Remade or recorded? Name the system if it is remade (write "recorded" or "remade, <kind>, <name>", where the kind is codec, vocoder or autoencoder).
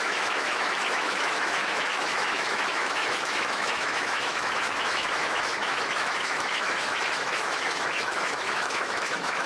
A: remade, autoencoder, DAC-VAE